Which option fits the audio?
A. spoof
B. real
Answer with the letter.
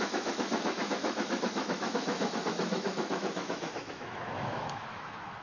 A